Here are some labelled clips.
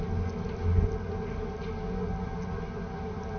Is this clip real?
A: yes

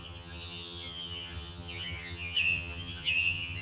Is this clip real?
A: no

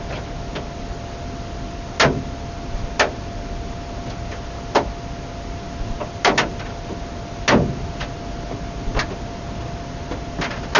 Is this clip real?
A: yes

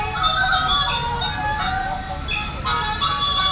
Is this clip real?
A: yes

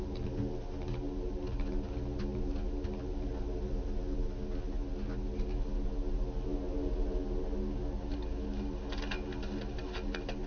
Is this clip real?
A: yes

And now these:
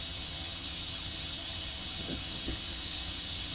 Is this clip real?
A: no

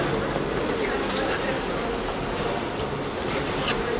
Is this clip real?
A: yes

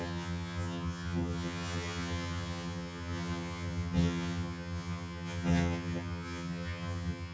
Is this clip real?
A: no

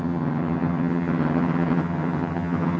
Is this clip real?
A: no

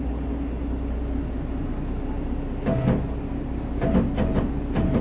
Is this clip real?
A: yes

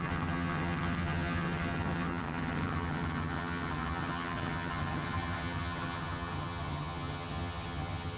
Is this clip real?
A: no